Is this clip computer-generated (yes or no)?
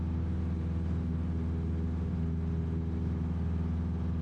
no